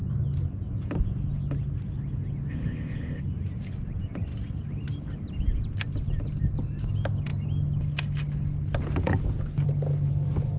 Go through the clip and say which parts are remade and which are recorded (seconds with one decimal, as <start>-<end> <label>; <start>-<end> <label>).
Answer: 0.0-2.5 recorded; 2.5-3.2 remade; 3.2-10.6 recorded

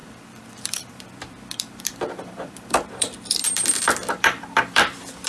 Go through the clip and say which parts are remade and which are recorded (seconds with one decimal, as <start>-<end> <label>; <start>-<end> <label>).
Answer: 0.0-5.3 remade